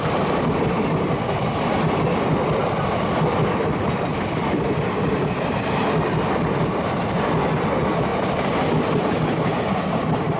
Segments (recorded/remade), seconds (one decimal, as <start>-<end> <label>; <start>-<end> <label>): 0.0-10.4 recorded